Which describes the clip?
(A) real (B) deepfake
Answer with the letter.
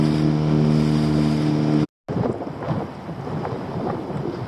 A